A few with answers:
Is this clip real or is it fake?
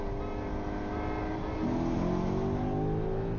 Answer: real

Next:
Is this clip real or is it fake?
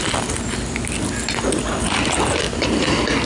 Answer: real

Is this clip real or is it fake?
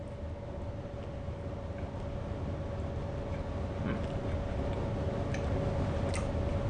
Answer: real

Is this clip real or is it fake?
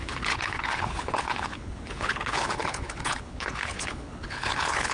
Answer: fake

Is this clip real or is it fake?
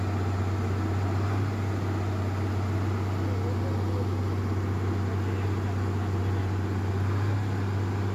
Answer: real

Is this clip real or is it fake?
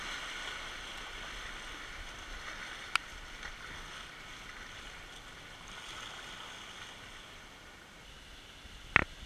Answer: real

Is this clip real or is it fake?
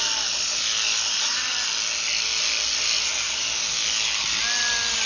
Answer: real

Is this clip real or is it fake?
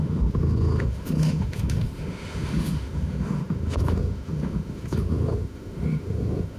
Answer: fake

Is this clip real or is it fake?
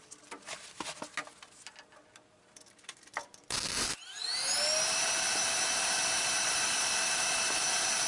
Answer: real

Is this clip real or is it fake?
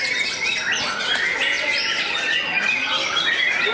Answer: real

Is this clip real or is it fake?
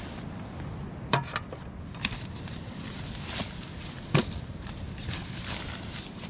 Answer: real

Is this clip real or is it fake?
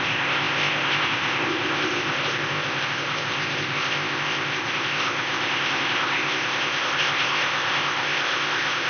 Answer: fake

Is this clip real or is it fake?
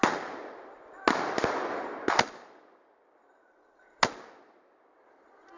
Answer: real